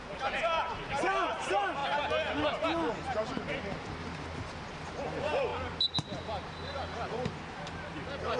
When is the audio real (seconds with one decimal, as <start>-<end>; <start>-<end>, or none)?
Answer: 0.0-8.4